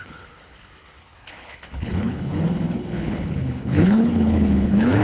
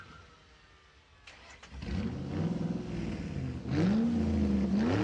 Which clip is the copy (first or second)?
first